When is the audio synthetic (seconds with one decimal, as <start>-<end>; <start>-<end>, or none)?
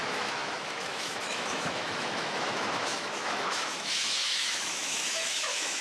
0.0-5.8